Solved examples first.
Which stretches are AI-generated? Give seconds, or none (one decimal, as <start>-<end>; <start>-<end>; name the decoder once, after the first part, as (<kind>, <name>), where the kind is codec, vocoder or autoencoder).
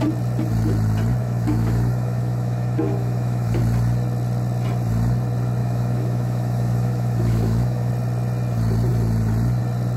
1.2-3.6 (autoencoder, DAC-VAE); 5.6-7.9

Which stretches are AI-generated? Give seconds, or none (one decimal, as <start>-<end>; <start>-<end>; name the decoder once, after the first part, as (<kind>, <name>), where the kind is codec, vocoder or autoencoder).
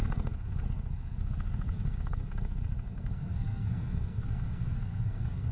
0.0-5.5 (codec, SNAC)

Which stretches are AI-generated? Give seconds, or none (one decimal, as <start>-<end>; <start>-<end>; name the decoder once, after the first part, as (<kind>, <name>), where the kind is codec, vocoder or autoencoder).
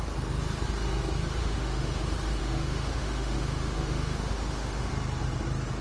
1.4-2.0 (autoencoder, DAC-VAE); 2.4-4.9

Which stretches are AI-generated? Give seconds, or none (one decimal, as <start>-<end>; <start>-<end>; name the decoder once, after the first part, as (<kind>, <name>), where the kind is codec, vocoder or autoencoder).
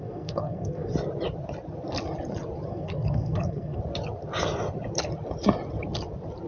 0.0-0.9 (codec, SNAC); 2.7-3.8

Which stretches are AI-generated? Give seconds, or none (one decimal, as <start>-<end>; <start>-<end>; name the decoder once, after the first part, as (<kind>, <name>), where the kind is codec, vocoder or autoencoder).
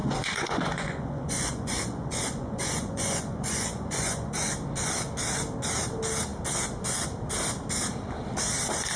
0.0-4.5 (vocoder, Vocos)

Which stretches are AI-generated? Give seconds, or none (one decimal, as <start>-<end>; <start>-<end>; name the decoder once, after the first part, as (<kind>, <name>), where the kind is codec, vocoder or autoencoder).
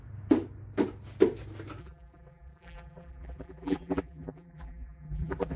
1.8-5.6 (vocoder, BigVGAN v2)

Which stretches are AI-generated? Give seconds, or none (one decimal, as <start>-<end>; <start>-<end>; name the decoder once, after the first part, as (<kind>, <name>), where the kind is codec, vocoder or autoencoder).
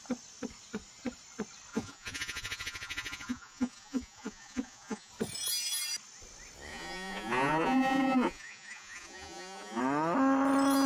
1.7-5.1 (vocoder, Vocos); 6.7-9.8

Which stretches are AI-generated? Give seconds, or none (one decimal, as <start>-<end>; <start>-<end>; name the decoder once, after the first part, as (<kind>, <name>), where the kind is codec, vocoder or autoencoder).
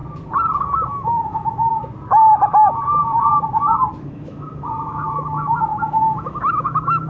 0.6-1.7 (autoencoder, DAC-VAE); 4.0-7.1